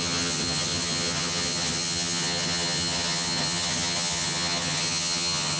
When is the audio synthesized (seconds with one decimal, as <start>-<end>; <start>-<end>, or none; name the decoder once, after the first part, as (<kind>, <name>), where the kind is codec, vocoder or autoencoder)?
0.0-5.6 (vocoder, HiFi-GAN)